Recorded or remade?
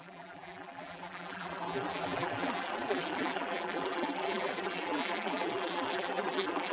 remade